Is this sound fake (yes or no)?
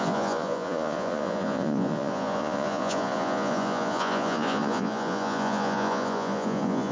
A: yes